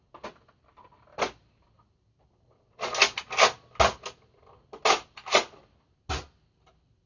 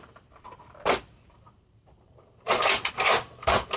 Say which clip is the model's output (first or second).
second